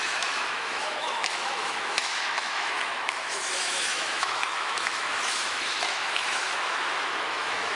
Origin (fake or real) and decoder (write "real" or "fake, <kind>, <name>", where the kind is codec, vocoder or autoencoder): fake, autoencoder, DAC-VAE